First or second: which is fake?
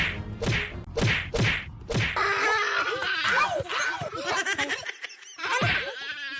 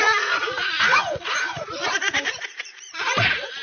second